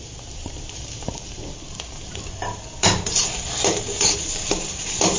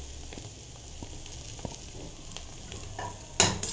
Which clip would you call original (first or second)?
second